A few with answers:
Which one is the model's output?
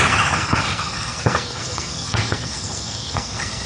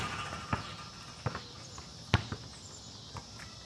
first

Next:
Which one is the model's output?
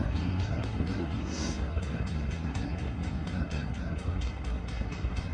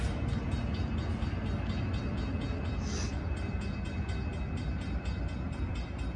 first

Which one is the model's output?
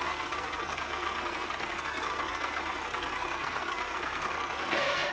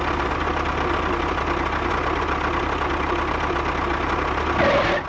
first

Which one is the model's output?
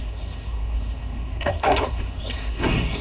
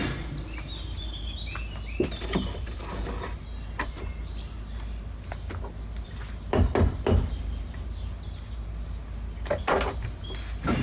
first